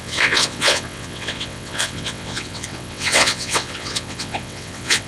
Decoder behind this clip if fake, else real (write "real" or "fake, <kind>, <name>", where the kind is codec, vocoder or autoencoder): fake, vocoder, WaveNeXt